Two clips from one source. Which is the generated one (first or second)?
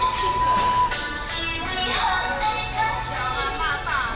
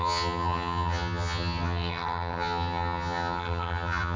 second